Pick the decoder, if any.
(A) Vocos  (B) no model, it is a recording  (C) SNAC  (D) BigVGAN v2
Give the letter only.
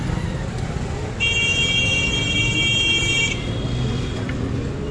B